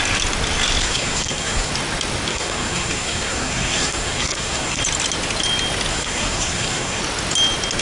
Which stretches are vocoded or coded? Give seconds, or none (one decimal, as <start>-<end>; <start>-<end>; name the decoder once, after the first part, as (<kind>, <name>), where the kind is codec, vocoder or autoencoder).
0.8-1.7 (codec, SNAC); 2.3-4.8; 5.9-7.0